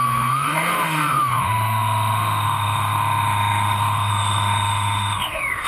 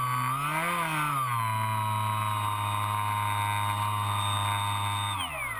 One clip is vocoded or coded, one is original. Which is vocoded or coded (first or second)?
first